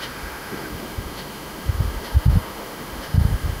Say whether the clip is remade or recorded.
remade